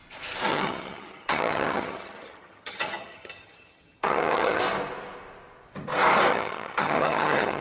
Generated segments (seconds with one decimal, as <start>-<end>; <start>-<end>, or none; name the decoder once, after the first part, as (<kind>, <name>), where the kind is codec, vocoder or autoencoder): 0.5-4.6 (vocoder, HiFi-GAN); 6.3-7.6